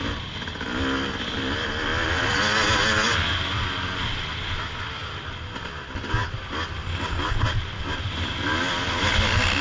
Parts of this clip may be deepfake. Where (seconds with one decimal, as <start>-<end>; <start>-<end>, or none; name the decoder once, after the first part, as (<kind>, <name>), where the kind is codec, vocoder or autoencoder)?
none